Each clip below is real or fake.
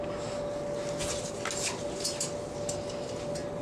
real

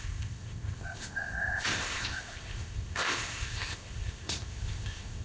fake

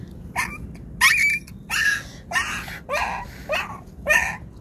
real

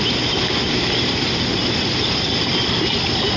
real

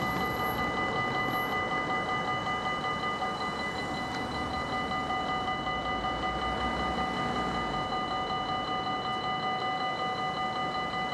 real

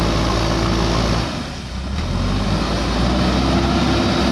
real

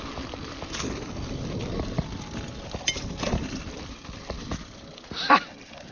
real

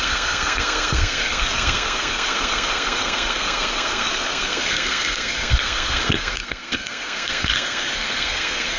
fake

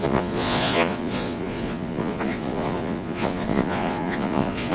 fake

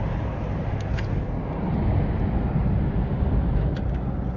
real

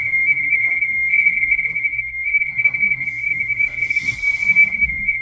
fake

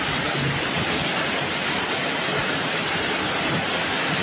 real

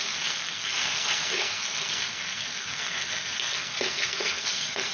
fake